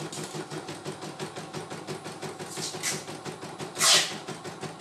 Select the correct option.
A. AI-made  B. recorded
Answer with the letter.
B